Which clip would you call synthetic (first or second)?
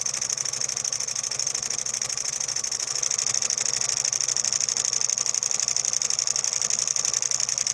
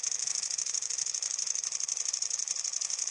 second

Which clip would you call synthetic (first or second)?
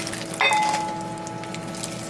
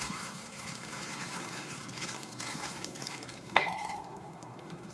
second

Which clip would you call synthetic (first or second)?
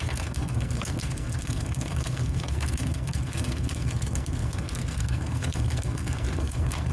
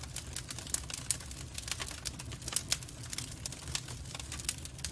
first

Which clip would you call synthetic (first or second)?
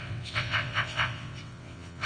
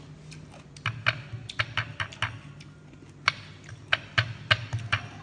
first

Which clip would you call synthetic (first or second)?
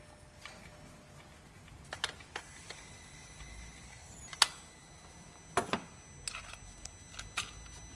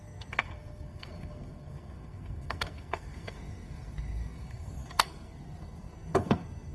second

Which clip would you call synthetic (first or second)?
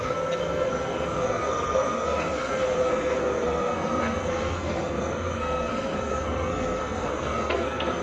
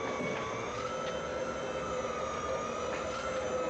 first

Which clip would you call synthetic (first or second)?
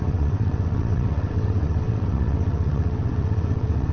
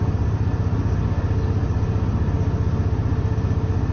first